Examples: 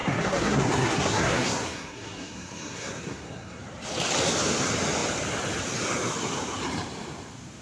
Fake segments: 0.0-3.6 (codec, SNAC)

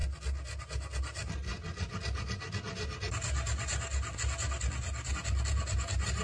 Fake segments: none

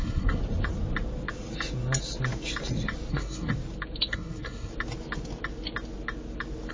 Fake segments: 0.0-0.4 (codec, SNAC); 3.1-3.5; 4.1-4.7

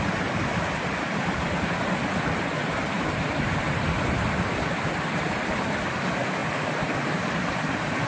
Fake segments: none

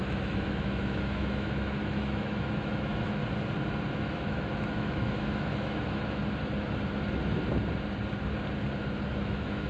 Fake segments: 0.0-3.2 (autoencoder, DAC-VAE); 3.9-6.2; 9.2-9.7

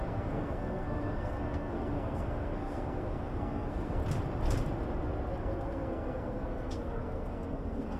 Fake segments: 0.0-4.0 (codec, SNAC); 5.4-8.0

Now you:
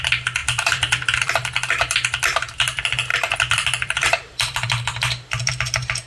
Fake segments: 0.4-1.3 (vocoder, BigVGAN v2); 3.1-5.5

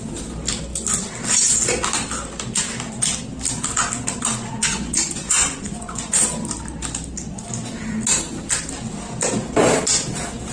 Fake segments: 4.5-6.1 (vocoder, Vocos)